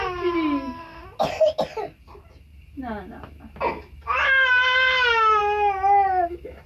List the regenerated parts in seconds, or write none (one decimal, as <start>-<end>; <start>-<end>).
none